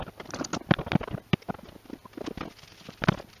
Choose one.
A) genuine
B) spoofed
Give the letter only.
A